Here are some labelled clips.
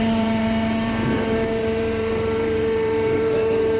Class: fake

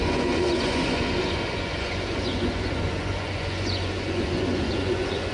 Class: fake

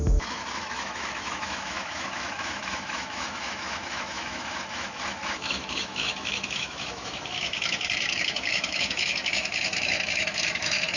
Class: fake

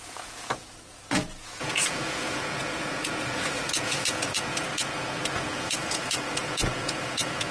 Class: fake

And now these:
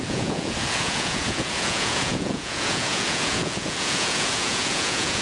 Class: fake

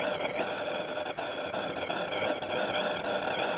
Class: real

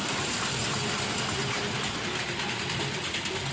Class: real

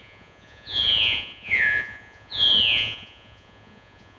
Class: fake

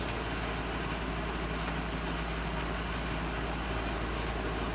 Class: real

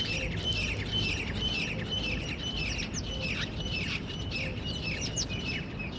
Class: real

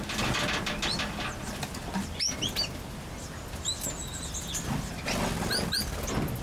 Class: real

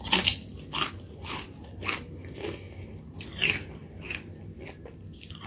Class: real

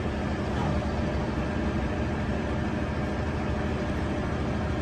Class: real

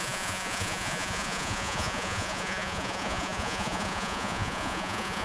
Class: fake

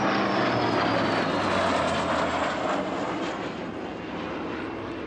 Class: real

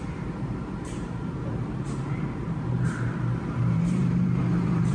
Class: fake